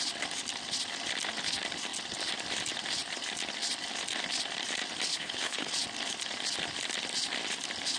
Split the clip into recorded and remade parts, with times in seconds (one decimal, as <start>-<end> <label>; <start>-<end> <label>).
0.0-5.1 recorded; 5.1-5.7 remade; 5.7-8.0 recorded